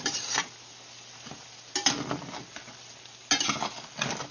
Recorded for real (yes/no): yes